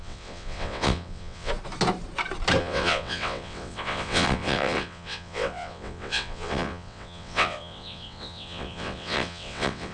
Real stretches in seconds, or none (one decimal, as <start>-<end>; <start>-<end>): 1.5-2.6